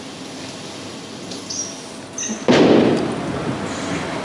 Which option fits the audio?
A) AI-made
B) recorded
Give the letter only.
B